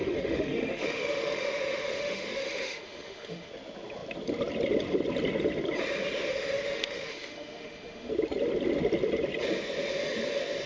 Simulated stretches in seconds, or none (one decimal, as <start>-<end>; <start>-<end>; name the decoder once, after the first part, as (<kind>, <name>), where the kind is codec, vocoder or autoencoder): 0.0-3.5 (autoencoder, DAC-VAE); 6.3-8.1